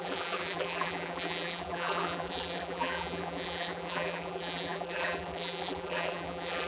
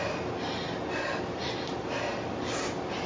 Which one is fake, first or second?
first